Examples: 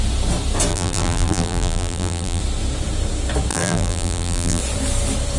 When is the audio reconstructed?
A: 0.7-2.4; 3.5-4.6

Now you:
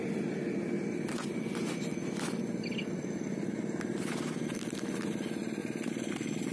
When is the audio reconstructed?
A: none

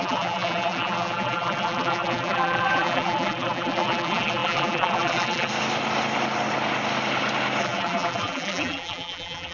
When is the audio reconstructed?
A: 0.0-5.5; 7.6-9.5

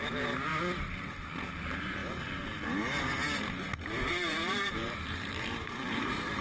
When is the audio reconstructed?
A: 0.0-0.5; 1.6-2.0; 4.1-6.4

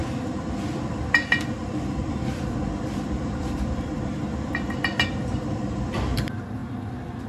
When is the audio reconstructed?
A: 0.0-4.1; 5.3-6.6

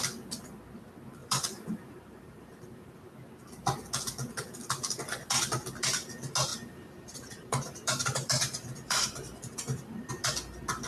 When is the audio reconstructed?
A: 1.2-3.0; 6.5-10.1

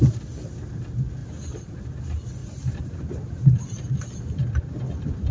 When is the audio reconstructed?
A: 1.2-2.0; 2.4-4.2

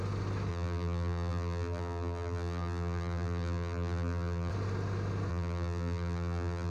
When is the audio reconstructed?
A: 0.5-4.5; 5.3-6.7